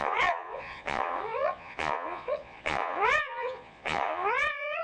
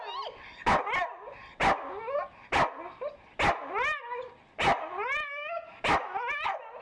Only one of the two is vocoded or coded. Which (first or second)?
first